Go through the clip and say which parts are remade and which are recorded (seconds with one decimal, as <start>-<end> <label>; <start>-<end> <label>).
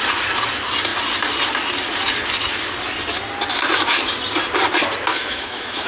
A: 0.0-5.1 recorded; 5.1-5.9 remade